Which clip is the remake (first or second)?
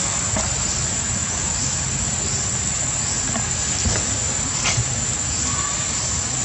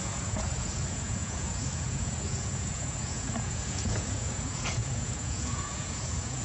second